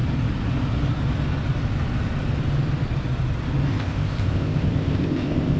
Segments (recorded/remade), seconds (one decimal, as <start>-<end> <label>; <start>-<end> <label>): 0.0-3.7 recorded; 3.7-5.6 remade